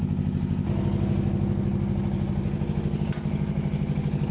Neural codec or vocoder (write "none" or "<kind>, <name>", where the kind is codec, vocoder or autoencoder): none